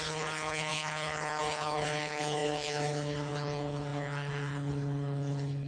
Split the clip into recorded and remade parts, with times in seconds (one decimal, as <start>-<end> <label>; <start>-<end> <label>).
0.0-5.7 remade